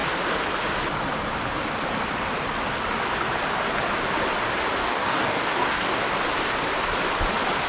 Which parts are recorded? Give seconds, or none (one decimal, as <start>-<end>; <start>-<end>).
0.0-4.8; 6.0-7.7